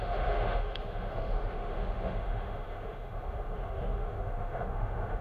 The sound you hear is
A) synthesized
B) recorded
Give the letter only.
A